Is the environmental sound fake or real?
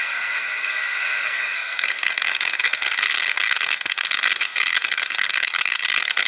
fake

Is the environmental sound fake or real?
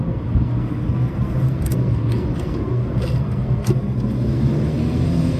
fake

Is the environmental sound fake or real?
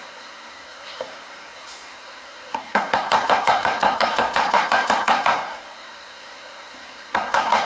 fake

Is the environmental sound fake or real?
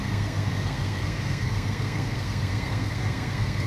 fake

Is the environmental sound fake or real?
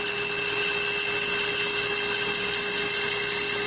real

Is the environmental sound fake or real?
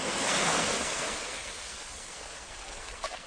fake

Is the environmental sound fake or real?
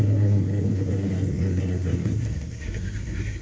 fake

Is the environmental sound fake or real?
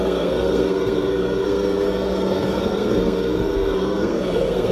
fake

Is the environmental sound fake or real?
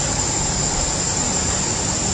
real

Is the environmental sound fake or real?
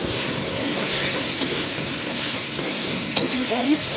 fake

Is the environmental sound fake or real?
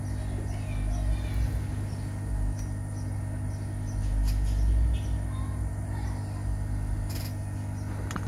real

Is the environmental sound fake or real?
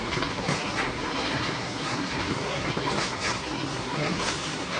fake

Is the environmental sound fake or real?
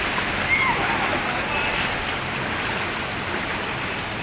real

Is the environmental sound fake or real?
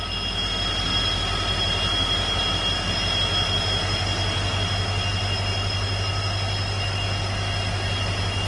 real